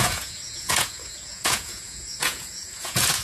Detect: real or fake fake